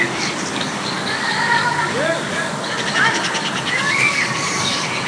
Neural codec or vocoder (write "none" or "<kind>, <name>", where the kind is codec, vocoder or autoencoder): codec, DAC